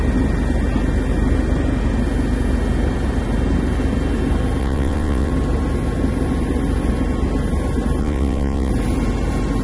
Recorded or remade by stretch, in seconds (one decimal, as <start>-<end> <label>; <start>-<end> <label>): 0.0-4.6 recorded; 4.6-5.3 remade; 5.3-8.0 recorded; 8.0-8.7 remade; 8.7-9.6 recorded